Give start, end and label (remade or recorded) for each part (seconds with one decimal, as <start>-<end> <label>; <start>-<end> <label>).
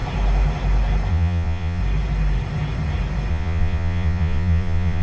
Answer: 0.0-1.1 recorded; 1.1-1.8 remade; 1.8-3.3 recorded; 3.3-5.0 remade